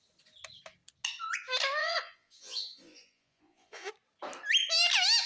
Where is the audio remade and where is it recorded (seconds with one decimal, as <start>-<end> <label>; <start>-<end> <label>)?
0.0-1.8 recorded; 1.8-3.9 remade; 3.9-5.3 recorded